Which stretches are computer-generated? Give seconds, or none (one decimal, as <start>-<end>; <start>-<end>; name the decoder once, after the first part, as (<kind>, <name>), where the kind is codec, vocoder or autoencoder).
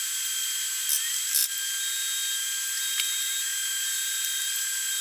none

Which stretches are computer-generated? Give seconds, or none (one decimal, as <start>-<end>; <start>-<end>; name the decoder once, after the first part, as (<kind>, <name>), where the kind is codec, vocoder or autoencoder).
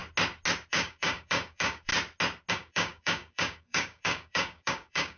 0.7-1.9 (codec, DAC); 2.5-5.2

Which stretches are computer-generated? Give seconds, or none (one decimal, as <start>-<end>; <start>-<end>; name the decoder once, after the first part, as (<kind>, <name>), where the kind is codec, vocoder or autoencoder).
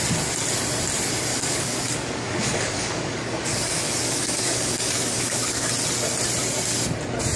1.3-5.7 (codec, DAC)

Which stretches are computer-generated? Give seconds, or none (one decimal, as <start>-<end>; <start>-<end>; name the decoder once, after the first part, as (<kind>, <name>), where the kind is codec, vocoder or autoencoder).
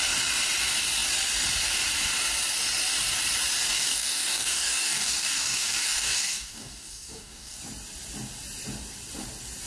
3.7-7.6 (codec, DAC)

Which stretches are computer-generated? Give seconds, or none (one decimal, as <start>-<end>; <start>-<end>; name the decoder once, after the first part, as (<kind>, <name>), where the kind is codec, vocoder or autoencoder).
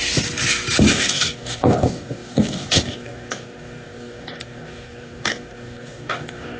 0.9-6.6 (codec, DAC)